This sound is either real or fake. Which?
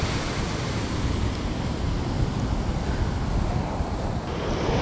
real